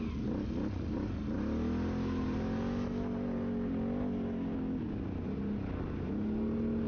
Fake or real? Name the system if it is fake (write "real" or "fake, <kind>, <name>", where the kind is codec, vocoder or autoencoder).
real